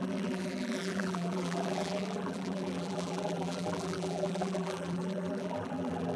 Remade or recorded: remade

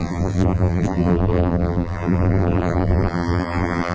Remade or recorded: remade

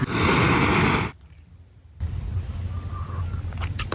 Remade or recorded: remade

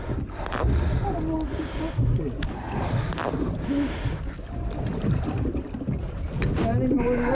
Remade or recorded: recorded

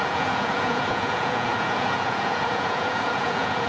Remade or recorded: remade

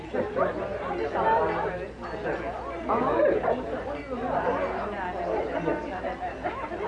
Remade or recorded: recorded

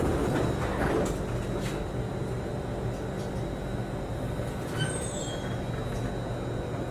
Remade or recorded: recorded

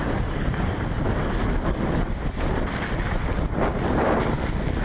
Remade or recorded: recorded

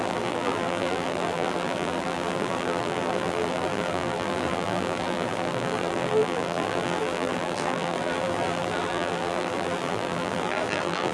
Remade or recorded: remade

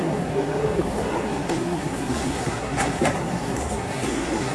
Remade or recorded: remade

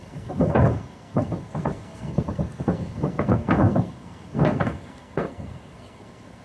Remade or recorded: remade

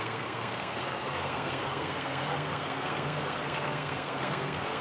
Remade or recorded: remade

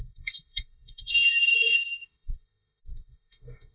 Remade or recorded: remade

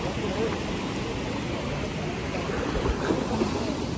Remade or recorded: recorded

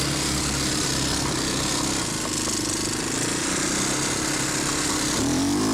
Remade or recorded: recorded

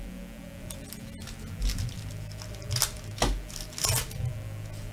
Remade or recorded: recorded